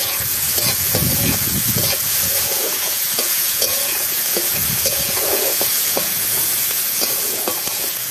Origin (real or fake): fake